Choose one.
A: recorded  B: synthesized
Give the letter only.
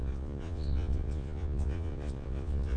B